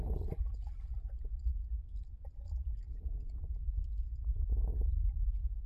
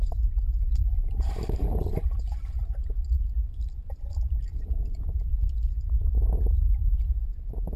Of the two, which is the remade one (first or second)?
second